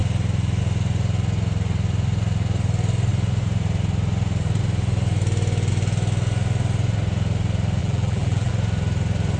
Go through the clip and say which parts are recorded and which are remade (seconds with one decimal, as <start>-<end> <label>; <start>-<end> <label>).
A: 0.0-7.8 recorded; 7.8-8.5 remade; 8.5-9.4 recorded